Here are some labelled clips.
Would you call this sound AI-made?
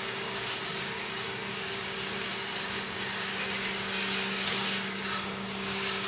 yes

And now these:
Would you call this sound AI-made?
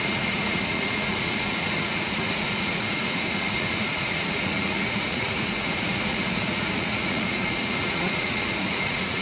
yes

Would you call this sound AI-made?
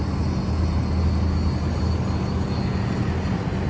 no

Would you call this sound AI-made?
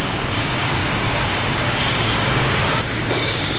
yes